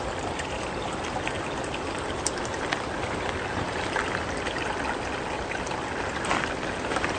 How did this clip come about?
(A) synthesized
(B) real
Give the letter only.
B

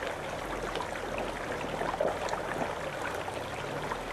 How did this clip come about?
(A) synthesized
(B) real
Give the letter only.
B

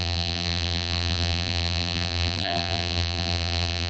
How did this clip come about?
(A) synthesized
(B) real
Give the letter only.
A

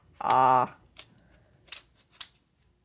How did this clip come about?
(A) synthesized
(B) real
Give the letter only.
B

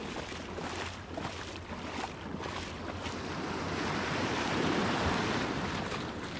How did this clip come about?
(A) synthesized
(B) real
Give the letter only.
B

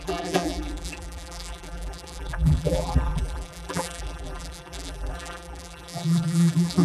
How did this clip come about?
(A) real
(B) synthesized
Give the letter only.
B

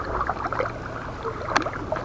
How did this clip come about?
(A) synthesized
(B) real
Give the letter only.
B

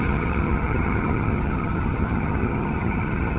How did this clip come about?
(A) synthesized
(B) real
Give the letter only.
A